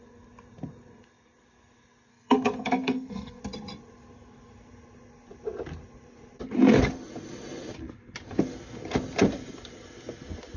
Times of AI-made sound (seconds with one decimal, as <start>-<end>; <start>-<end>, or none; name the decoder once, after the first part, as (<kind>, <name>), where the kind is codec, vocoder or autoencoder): 2.1-3.4 (codec, SNAC)